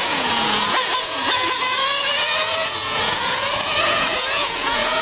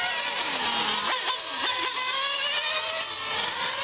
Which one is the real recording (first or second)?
second